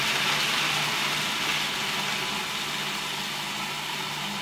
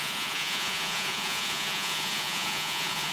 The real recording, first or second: first